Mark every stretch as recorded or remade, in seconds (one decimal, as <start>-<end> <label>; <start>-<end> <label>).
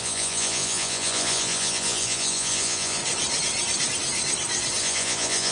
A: 0.0-3.0 remade; 3.0-4.8 recorded; 4.8-5.5 remade